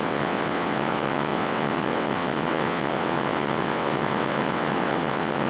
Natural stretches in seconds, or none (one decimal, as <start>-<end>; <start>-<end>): none